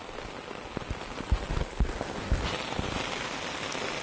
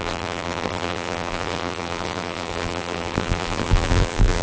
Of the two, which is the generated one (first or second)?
second